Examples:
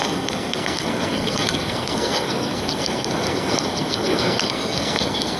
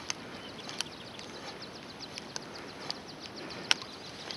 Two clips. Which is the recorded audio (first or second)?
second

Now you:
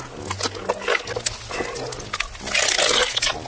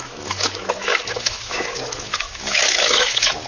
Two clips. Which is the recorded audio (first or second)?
first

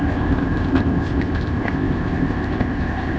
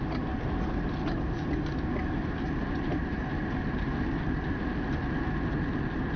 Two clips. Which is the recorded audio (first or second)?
second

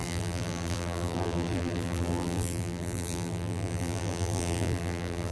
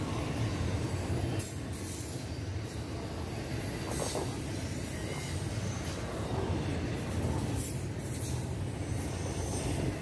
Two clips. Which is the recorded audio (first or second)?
second